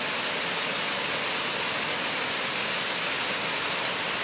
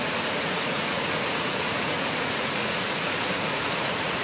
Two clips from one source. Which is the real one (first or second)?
first